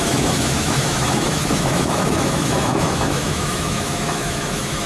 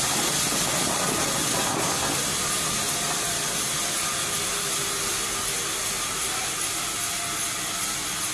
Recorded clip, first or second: second